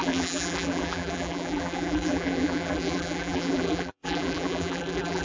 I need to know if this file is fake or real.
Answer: fake